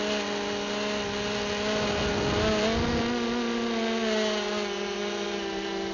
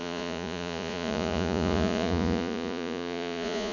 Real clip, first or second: first